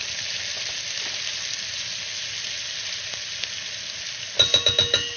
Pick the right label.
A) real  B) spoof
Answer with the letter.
A